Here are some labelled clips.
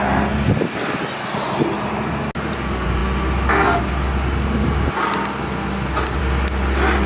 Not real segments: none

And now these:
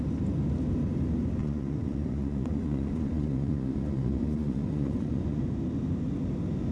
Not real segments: 1.4-5.4

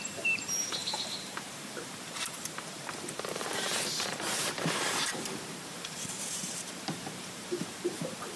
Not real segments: 0.0-8.4

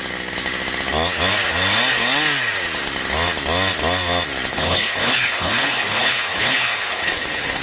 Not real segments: 4.5-7.6

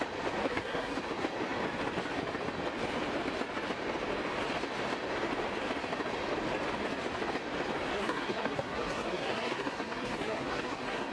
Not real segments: 0.4-1.0; 7.9-11.1

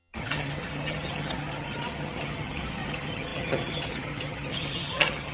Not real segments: 0.0-5.3

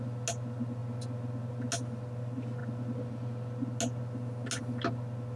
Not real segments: none